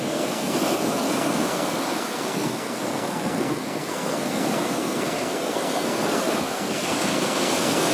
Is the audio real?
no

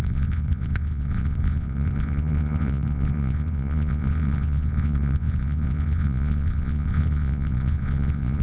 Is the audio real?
no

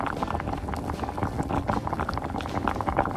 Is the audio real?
yes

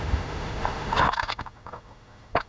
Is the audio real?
no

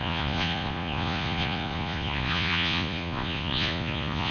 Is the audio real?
no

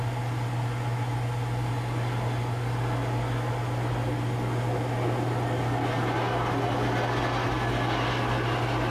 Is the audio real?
yes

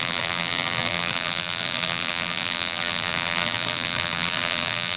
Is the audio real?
no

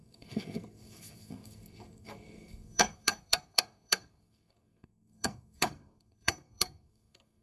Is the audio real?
no